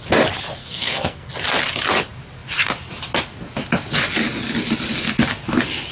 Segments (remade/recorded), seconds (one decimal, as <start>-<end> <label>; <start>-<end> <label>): 0.0-0.6 recorded; 0.6-1.3 remade; 1.3-5.9 recorded

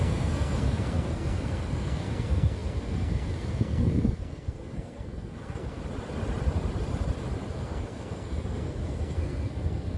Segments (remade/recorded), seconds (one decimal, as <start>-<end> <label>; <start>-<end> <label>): 0.0-5.8 remade; 5.8-7.5 recorded; 7.5-10.0 remade

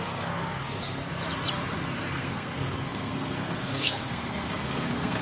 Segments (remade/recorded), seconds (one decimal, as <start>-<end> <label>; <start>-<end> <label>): 0.0-1.0 remade; 1.0-2.1 recorded; 2.1-5.2 remade